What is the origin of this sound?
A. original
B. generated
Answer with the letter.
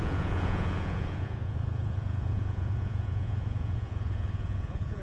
B